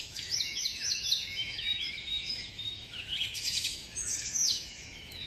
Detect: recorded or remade remade